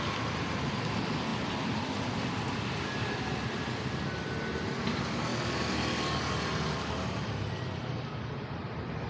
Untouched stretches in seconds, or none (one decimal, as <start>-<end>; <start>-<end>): 0.0-9.1